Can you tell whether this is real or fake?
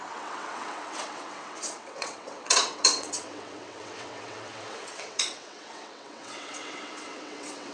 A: fake